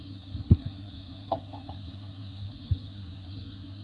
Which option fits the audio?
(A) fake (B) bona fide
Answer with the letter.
A